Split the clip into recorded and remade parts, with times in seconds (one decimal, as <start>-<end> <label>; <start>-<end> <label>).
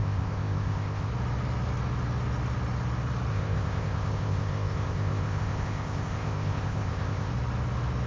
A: 0.0-1.1 remade; 1.1-3.3 recorded; 3.3-7.3 remade; 7.3-8.1 recorded